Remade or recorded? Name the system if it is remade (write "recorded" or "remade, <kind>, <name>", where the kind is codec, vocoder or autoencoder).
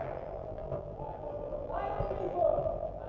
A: remade, vocoder, BigVGAN v2